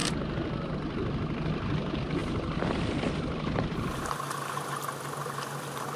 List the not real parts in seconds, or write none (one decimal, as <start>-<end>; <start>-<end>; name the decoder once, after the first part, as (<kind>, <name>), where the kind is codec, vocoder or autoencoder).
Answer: none